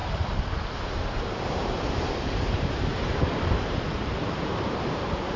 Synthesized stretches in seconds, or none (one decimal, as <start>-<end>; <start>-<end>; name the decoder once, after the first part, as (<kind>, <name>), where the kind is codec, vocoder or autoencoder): 0.8-5.4 (vocoder, BigVGAN v2)